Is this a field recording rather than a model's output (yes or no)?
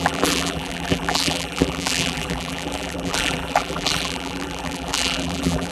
no